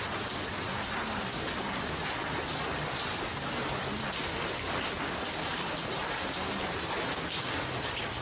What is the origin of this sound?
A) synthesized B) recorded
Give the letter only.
B